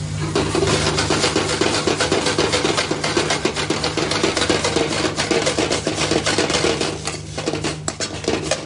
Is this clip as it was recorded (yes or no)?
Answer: yes